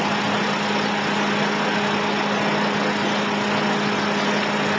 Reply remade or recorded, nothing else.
recorded